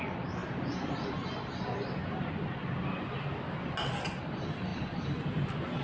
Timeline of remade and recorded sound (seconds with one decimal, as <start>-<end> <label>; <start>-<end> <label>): 0.0-4.7 recorded; 4.7-5.8 remade